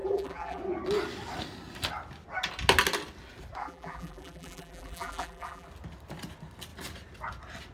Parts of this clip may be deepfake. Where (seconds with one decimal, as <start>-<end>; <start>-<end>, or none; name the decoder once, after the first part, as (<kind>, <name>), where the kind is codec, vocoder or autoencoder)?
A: 0.0-0.6 (vocoder, BigVGAN v2); 3.6-5.7